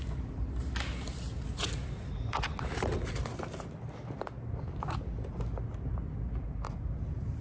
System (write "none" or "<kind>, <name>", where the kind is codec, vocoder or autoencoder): none